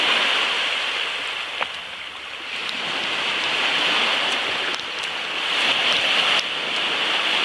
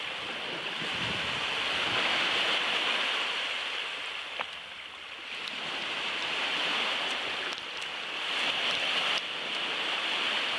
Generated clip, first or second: second